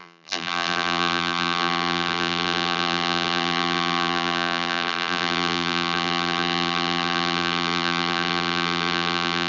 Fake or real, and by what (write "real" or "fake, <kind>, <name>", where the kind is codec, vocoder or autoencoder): fake, vocoder, BigVGAN v2